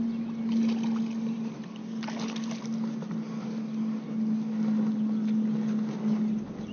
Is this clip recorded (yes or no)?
yes